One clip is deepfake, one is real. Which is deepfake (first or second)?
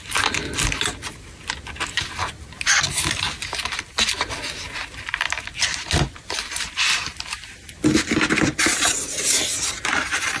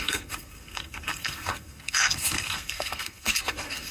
second